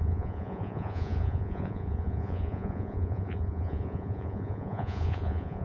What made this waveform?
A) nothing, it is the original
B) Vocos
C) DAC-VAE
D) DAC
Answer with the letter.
B